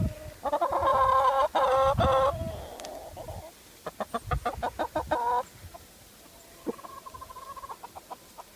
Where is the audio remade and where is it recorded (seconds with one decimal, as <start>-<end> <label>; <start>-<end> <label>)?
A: 0.0-8.6 recorded